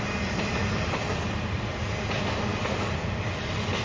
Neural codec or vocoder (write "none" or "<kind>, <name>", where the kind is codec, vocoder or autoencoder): none